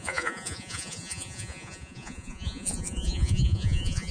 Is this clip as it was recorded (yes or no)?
no